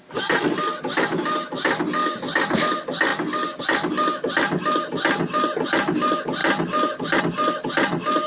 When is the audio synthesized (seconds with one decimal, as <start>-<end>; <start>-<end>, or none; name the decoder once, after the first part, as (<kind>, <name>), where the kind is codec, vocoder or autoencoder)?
none